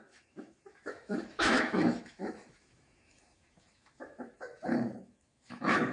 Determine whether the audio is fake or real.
fake